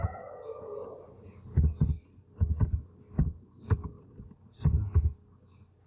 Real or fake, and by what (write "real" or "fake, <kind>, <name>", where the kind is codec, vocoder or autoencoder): real